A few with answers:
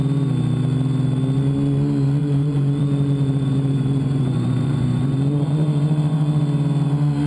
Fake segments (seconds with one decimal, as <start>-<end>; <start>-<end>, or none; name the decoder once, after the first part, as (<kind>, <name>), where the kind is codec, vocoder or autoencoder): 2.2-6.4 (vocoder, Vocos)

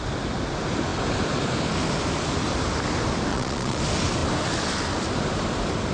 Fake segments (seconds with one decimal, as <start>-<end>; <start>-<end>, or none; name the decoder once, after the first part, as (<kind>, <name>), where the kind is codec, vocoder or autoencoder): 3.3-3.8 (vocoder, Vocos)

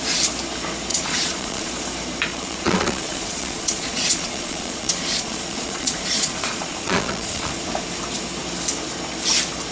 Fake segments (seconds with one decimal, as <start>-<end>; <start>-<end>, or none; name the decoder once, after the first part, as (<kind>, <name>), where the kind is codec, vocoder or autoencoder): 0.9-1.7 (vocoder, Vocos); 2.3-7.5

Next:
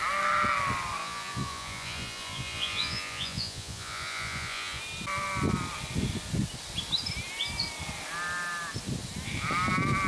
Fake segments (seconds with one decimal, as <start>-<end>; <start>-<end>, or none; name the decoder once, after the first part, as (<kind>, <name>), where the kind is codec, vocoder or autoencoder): 1.0-4.8 (vocoder, Vocos)

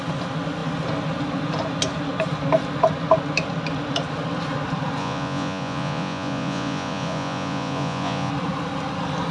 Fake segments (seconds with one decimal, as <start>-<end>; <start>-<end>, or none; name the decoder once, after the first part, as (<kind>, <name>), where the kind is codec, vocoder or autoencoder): 5.0-8.3 (vocoder, Vocos)

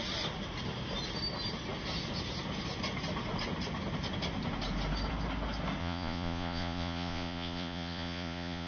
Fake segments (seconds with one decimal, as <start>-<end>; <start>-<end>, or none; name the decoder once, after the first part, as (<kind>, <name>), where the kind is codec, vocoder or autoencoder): 5.8-8.7 (vocoder, Vocos)

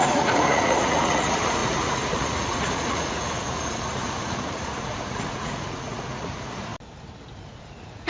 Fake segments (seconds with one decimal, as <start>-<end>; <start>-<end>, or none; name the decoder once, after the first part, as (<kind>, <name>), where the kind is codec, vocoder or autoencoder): 0.0-6.7 (vocoder, Vocos); 7.3-8.1

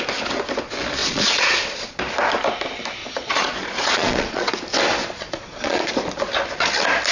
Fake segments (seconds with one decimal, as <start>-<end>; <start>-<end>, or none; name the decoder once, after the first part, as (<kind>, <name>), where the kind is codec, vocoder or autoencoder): 1.0-2.0 (vocoder, Vocos); 3.0-4.5; 5.0-5.9